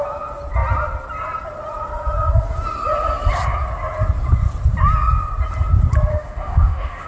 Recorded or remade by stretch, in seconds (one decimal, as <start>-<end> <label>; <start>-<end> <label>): 0.0-6.1 recorded; 6.1-7.1 remade